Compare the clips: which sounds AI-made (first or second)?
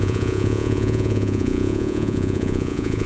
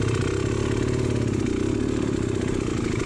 first